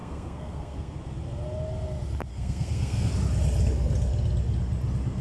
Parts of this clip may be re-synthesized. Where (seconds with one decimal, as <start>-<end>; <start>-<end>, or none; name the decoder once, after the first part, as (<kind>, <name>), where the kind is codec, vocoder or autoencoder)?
0.0-0.9 (codec, SNAC); 2.3-3.1